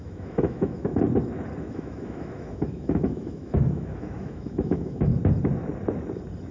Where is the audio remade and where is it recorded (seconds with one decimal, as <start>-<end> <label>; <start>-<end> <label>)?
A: 0.0-0.9 remade; 0.9-1.6 recorded; 1.6-5.1 remade; 5.1-6.5 recorded

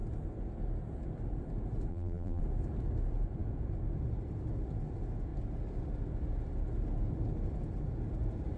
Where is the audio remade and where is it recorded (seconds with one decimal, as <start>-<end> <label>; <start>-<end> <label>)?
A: 0.0-1.9 recorded; 1.9-2.4 remade; 2.4-8.6 recorded